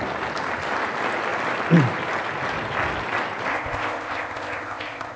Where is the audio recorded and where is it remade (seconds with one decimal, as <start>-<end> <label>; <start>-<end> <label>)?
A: 0.0-3.5 recorded; 3.5-5.2 remade